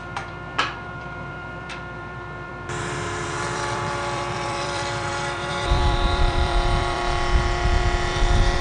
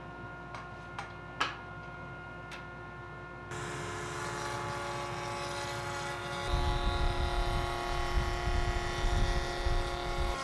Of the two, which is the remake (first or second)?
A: first